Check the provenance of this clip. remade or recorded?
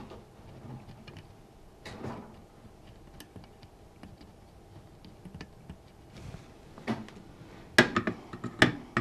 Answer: recorded